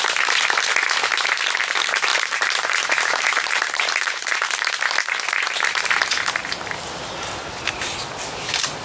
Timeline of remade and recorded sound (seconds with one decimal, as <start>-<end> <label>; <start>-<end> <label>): 0.0-2.1 recorded; 2.1-4.7 remade; 4.7-8.8 recorded